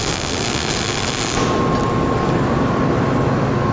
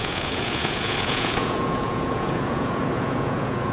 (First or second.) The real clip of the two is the first